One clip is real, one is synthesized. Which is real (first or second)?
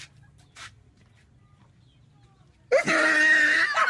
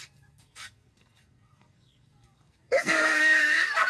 first